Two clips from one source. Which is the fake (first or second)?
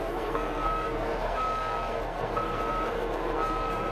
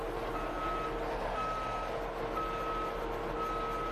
first